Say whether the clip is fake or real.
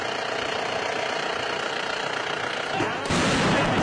real